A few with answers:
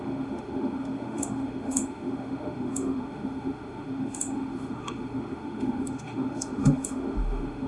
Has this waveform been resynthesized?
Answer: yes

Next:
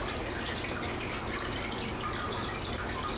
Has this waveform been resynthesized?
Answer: no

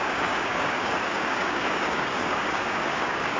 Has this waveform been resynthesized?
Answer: yes